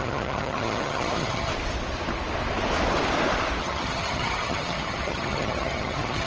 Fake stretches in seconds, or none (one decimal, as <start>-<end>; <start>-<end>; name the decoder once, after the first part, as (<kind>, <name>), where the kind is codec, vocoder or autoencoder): 0.0-1.5 (vocoder, HiFi-GAN); 3.6-6.3